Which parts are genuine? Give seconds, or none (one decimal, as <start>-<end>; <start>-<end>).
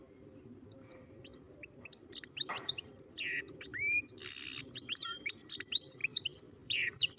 none